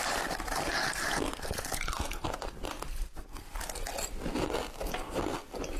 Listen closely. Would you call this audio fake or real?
real